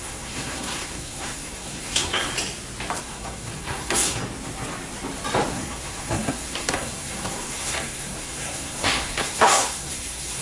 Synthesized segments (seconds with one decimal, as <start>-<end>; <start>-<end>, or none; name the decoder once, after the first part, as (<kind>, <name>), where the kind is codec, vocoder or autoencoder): 0.0-2.3 (codec, SNAC); 3.0-4.2; 5.5-10.4